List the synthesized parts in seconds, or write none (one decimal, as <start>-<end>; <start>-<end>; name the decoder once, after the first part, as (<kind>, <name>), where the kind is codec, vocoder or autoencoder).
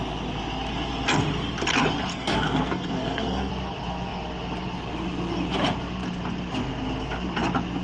2.1-3.5 (codec, SNAC)